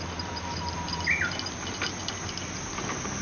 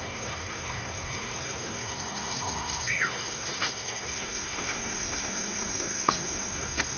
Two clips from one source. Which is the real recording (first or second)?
first